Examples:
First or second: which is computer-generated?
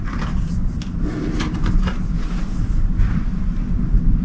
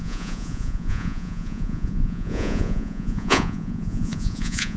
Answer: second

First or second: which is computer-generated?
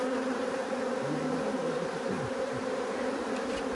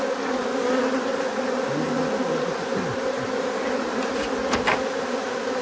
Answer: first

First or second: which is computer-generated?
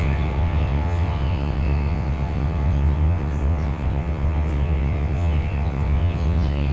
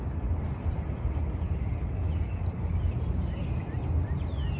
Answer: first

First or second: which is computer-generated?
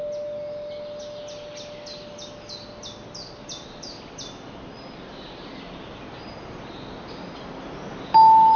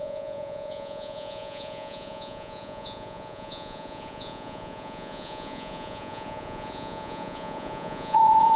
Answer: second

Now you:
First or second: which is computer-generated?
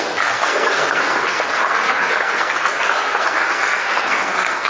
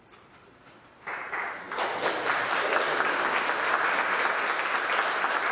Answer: first